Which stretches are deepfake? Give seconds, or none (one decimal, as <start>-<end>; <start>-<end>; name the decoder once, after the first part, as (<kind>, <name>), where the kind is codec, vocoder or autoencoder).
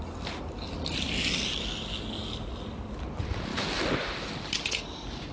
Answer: none